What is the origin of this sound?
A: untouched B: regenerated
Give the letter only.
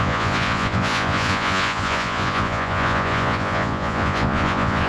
B